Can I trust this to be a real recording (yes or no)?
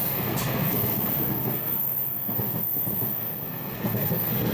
no